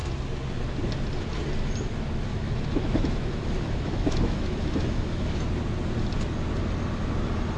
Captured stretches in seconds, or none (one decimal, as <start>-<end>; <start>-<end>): 0.0-2.3; 5.3-7.6